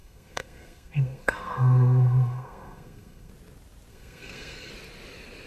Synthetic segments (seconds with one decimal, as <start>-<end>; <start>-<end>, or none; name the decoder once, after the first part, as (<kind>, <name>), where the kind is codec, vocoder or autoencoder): 0.0-3.3 (codec, SNAC); 3.9-4.7